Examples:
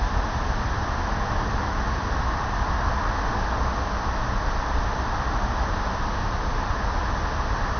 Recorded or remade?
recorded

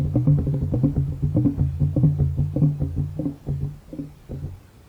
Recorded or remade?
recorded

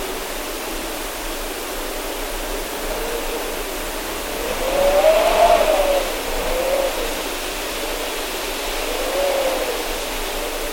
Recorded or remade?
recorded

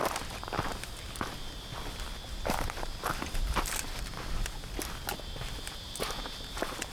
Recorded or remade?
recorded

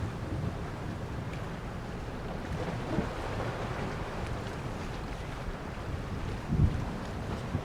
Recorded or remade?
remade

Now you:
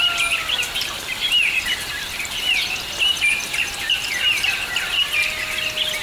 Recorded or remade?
recorded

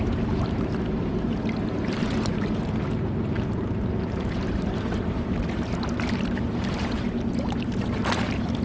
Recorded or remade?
remade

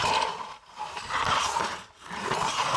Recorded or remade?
remade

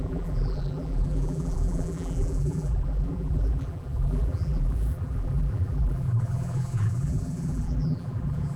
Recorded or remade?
remade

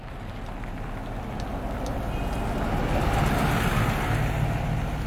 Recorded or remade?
recorded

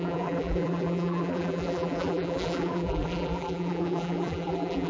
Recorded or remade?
remade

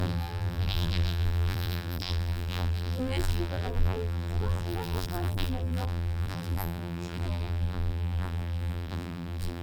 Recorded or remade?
remade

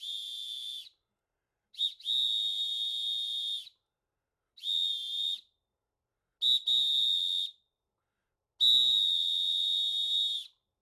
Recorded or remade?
recorded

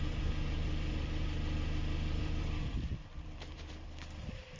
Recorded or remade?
remade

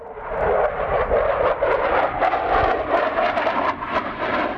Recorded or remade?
recorded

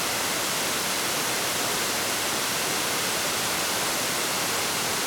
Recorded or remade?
recorded